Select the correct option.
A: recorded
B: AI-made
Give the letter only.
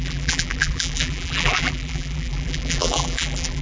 B